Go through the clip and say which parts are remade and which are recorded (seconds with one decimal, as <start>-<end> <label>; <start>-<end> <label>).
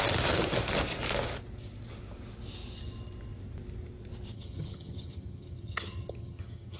0.0-4.3 recorded; 4.3-6.8 remade